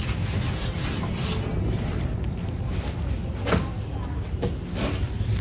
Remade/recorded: recorded